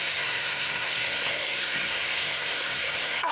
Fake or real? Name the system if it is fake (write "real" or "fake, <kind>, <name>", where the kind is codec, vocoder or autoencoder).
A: fake, codec, SNAC